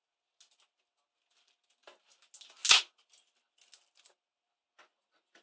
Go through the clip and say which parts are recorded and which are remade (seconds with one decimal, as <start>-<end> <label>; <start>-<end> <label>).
0.0-5.4 recorded